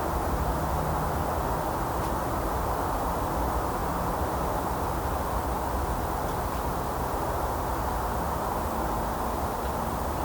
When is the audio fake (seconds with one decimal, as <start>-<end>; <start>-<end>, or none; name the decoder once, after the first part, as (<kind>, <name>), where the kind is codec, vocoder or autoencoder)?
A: none

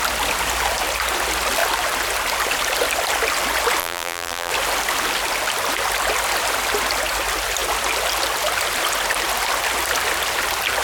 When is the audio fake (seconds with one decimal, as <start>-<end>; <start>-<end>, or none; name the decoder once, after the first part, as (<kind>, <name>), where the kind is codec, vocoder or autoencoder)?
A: 3.8-4.5 (vocoder, BigVGAN v2)

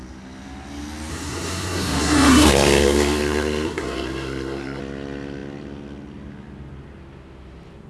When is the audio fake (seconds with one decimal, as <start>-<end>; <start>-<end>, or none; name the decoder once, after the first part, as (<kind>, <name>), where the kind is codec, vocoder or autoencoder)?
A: 1.1-4.8 (codec, SNAC)